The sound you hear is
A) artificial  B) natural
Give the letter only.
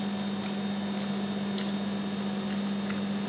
B